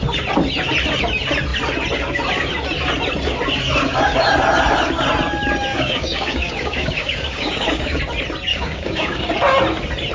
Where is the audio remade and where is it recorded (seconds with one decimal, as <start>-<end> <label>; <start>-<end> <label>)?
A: 0.0-5.7 recorded; 5.7-8.0 remade; 8.0-8.5 recorded; 8.5-9.3 remade; 9.3-10.1 recorded